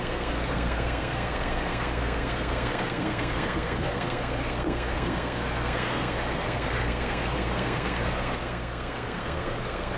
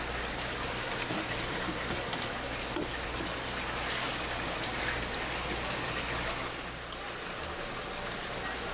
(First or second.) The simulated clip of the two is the first